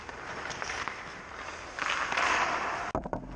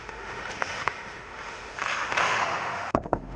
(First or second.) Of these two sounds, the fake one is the second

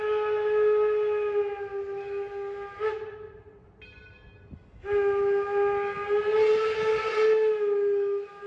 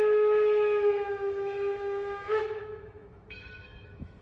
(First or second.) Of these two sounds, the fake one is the second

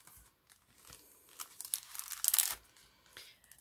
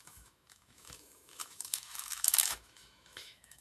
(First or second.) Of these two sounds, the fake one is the second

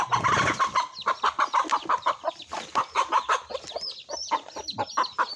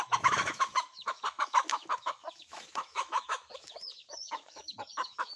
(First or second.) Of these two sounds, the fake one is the second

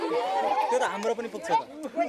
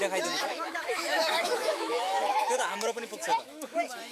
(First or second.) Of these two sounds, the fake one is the second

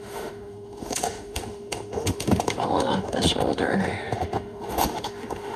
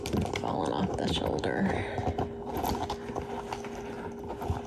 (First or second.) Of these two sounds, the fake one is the first